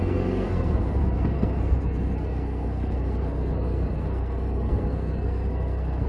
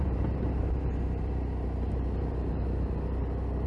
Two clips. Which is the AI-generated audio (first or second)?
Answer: first